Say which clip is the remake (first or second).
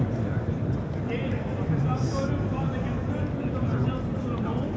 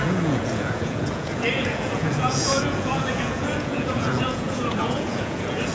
second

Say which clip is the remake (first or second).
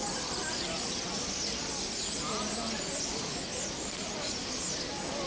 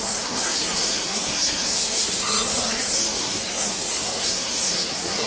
second